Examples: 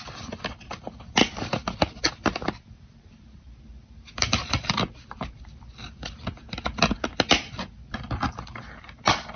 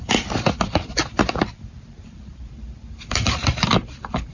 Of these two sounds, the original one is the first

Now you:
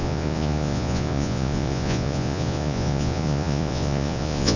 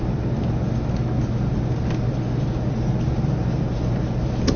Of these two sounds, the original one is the second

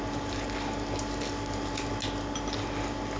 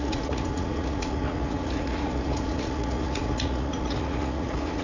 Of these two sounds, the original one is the first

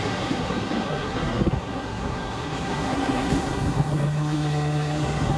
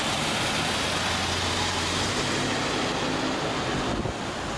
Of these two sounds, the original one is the second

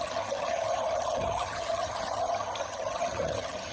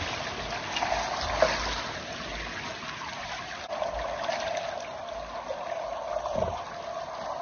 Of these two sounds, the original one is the second